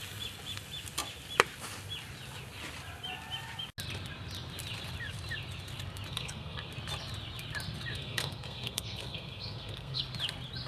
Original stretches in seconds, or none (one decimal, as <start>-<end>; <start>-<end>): 0.0-6.1; 6.7-7.9; 10.0-10.7

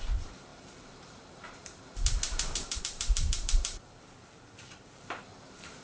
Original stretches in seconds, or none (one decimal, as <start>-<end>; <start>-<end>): none

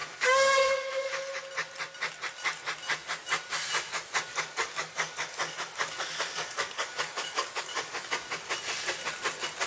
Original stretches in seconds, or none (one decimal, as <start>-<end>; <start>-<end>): 1.1-4.3; 8.1-9.7

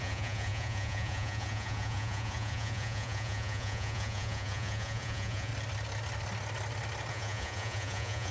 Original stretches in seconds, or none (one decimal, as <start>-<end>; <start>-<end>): 5.5-7.1

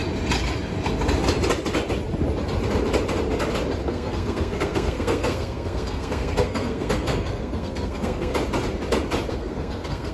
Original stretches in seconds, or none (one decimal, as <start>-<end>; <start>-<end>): 0.0-3.9; 8.3-9.3